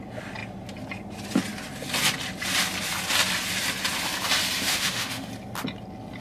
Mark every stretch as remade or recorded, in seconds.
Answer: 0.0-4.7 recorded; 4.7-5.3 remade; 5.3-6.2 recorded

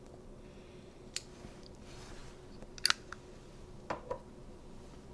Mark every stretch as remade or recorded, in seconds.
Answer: 0.0-5.1 recorded

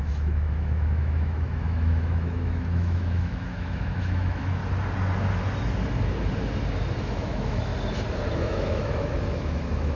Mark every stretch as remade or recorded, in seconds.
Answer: 0.0-4.6 remade; 4.6-7.0 recorded; 7.0-7.7 remade; 7.7-8.3 recorded; 8.3-9.9 remade

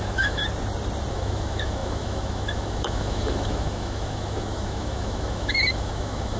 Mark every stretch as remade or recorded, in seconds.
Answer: 0.0-0.4 remade; 0.4-1.1 recorded; 1.1-6.4 remade

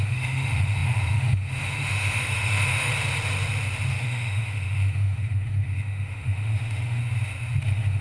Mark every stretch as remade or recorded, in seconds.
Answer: 0.0-2.9 remade; 2.9-3.9 recorded; 3.9-7.0 remade; 7.0-7.6 recorded; 7.6-8.0 remade

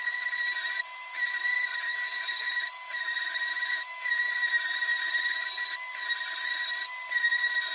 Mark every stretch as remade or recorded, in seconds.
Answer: 0.0-1.7 recorded; 1.7-3.0 remade; 3.0-3.5 recorded; 3.5-4.2 remade; 4.2-7.7 recorded

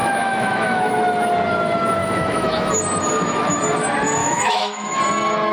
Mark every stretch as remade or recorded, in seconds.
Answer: 0.0-0.9 remade; 0.9-2.0 recorded; 2.0-2.7 remade; 2.7-4.2 recorded; 4.2-5.0 remade; 5.0-5.5 recorded